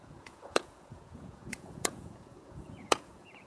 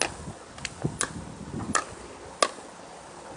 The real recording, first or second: second